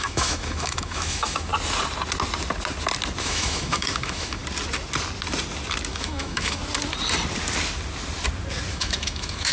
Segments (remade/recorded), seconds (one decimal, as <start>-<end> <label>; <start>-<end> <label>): 0.0-1.5 remade; 1.5-3.2 recorded; 3.2-4.4 remade; 4.4-5.9 recorded; 5.9-6.6 remade; 6.6-8.7 recorded; 8.7-9.5 remade